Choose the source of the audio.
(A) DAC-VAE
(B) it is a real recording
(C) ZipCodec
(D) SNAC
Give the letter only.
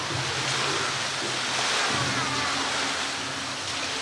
B